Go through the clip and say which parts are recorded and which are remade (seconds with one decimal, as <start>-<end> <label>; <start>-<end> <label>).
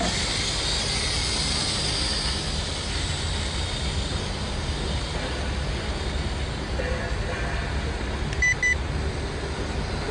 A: 0.0-10.1 recorded